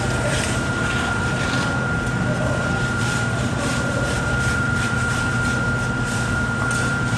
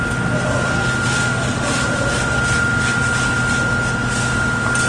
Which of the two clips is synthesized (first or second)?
first